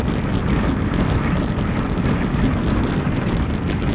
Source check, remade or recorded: recorded